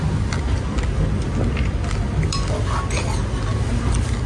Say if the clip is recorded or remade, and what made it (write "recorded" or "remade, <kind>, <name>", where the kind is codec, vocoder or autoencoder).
recorded